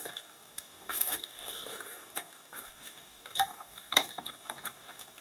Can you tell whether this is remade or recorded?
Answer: remade